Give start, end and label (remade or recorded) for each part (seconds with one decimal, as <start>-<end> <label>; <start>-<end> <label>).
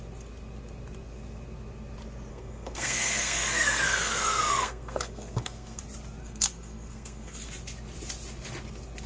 0.0-2.3 recorded; 2.3-5.8 remade; 5.8-6.2 recorded; 6.2-7.5 remade; 7.5-9.1 recorded